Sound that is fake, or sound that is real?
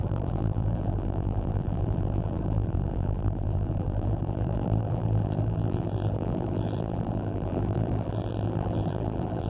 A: fake